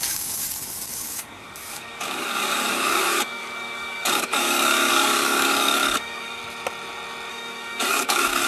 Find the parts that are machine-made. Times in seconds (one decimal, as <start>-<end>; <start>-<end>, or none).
0.0-6.4; 7.3-8.5